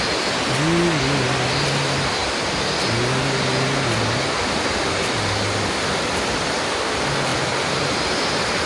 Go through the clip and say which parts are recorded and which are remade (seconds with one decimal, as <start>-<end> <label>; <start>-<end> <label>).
0.0-8.7 recorded